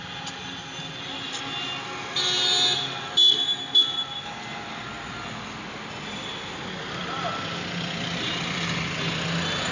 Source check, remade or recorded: recorded